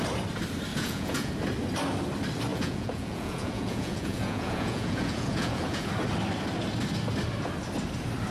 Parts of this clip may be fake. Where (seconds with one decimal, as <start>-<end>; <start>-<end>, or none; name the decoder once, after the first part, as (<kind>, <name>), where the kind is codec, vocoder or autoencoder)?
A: 0.7-1.3 (vocoder, Vocos); 2.5-5.9